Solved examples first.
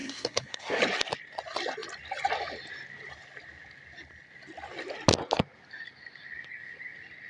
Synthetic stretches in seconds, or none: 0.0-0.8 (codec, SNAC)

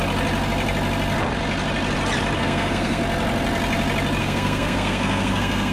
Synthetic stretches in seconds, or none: 2.4-3.0 (codec, SNAC); 4.2-5.7

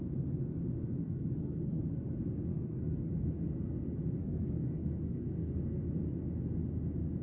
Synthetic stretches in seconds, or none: 1.0-1.8 (codec, SNAC); 2.5-3.1; 4.2-5.9

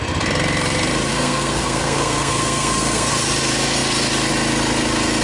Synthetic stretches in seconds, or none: 1.1-3.1 (codec, SNAC)

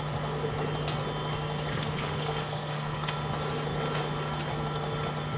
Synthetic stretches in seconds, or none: 1.7-3.1 (codec, SNAC)

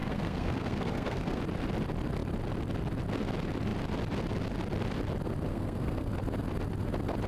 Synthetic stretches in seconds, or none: 0.0-1.4 (codec, SNAC); 5.5-6.1